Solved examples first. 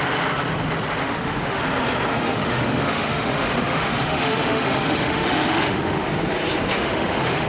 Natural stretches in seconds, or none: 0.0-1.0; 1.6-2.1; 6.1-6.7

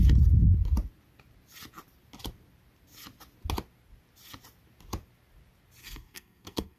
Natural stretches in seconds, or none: 0.0-5.8

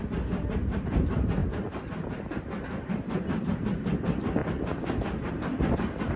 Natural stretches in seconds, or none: 0.0-6.2

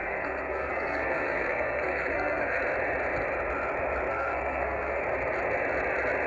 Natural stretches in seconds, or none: 2.6-4.1; 5.0-6.3

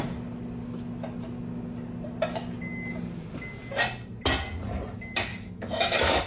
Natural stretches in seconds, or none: 0.0-5.3

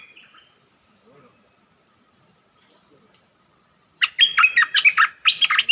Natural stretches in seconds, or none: 0.0-5.7

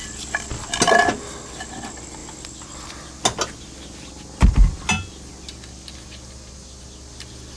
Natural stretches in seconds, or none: 0.0-7.6